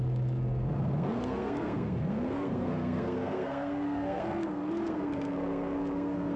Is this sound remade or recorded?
remade